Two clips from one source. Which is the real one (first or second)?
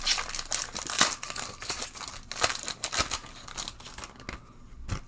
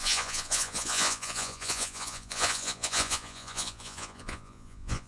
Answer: first